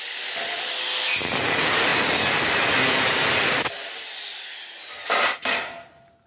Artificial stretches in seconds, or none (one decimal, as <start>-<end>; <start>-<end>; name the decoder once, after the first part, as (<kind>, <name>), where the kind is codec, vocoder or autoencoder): none